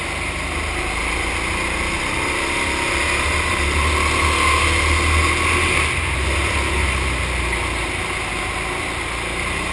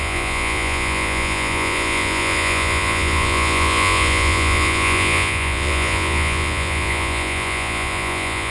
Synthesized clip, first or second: second